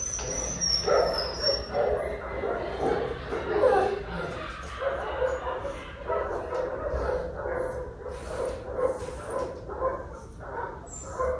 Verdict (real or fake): real